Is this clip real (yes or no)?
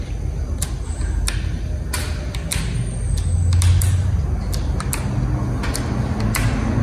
yes